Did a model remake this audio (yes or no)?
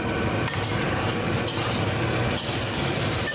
yes